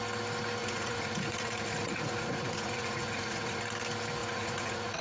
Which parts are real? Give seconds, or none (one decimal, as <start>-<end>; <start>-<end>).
0.0-0.6; 3.6-4.2